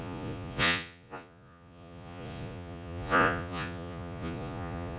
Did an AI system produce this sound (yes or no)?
yes